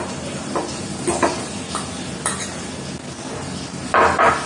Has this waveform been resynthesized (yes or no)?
no